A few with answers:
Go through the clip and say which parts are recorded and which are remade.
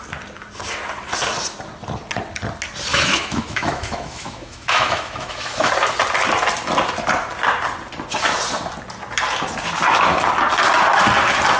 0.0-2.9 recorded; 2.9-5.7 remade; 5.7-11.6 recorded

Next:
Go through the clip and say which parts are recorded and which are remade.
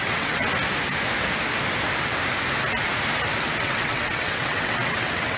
0.0-0.4 remade; 0.4-3.6 recorded; 3.6-5.4 remade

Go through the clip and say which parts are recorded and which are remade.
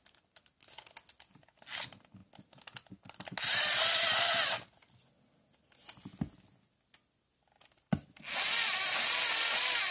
0.0-9.9 recorded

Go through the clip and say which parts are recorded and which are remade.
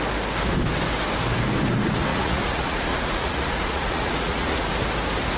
0.0-2.1 recorded; 2.1-4.7 remade; 4.7-5.4 recorded